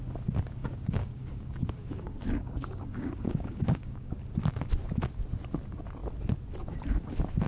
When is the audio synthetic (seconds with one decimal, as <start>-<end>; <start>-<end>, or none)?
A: 0.6-4.1